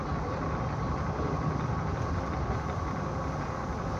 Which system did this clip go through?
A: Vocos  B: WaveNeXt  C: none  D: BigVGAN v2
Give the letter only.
C